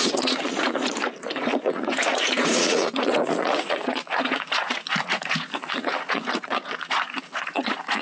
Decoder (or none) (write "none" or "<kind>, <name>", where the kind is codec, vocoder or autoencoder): vocoder, Vocos